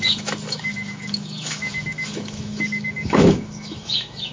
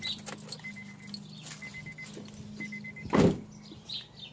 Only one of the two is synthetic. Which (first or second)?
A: first